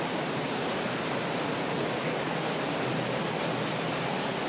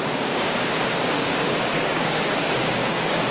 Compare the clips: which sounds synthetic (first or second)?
second